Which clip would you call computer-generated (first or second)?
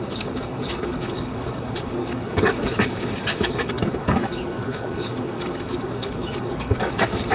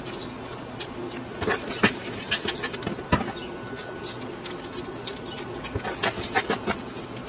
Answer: first